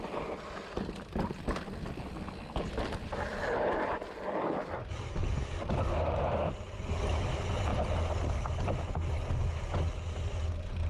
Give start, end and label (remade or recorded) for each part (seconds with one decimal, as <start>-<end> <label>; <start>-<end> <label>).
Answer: 0.0-10.9 recorded